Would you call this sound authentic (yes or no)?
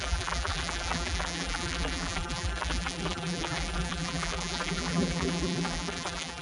no